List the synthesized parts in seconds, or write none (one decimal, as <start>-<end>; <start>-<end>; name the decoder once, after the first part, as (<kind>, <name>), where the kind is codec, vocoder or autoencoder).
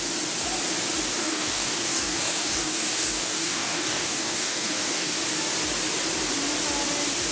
1.2-5.2 (codec, DAC)